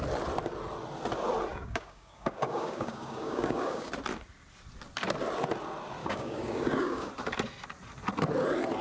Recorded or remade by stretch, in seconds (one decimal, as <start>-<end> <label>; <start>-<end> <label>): 0.0-1.5 recorded; 1.5-3.9 remade; 3.9-6.0 recorded; 6.0-7.1 remade; 7.1-8.8 recorded